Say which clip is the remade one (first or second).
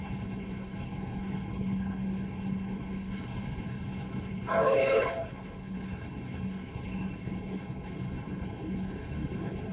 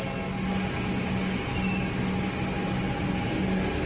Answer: first